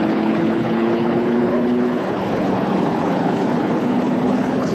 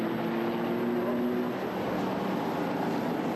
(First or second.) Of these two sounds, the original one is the second